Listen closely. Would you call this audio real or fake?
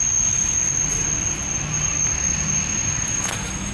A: real